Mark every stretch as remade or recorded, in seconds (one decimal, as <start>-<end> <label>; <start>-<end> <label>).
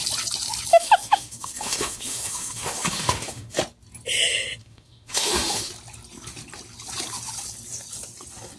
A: 0.0-0.7 recorded; 0.7-3.6 remade; 3.6-4.6 recorded; 4.6-5.7 remade; 5.7-8.6 recorded